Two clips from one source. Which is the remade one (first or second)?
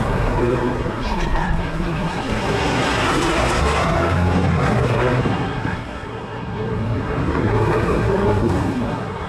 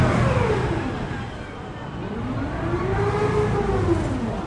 first